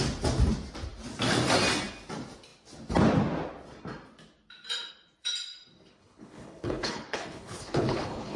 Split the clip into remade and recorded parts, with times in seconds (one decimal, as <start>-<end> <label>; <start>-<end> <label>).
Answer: 0.0-5.9 recorded; 5.9-8.4 remade